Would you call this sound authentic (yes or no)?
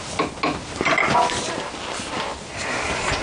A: yes